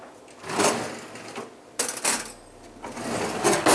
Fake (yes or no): no